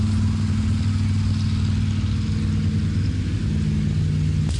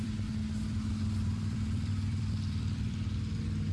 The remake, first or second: second